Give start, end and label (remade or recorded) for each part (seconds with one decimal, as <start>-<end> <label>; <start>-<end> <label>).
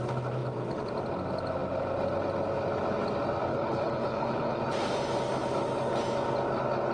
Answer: 0.0-3.5 recorded; 3.5-4.6 remade; 4.6-6.9 recorded